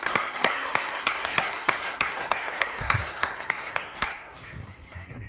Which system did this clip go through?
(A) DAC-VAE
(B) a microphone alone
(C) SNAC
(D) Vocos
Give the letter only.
C